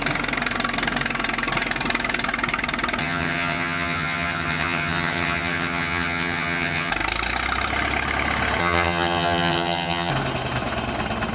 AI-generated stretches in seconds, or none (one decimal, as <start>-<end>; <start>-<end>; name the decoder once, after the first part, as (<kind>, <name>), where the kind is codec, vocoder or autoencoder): 3.0-6.9 (vocoder, HiFi-GAN); 8.6-10.1

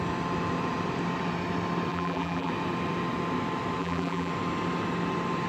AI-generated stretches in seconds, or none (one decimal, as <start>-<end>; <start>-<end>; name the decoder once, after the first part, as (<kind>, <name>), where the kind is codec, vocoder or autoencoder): 1.9-2.5 (vocoder, BigVGAN v2); 3.8-4.3